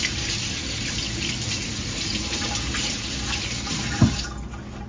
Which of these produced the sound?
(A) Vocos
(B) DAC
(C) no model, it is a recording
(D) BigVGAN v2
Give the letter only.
C